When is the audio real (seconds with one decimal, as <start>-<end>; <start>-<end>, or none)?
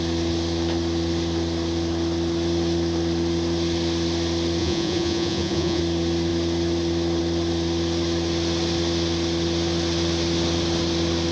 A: 0.0-4.6; 5.8-11.3